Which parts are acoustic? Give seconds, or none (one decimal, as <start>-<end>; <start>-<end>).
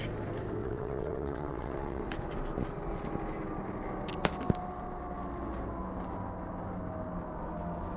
0.0-0.6; 2.0-8.0